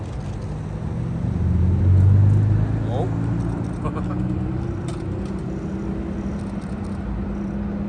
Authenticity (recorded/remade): recorded